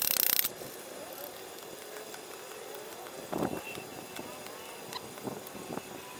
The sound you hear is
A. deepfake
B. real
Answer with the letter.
B